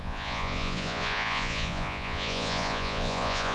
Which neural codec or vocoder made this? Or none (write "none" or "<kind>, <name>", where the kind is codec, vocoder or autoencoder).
vocoder, Vocos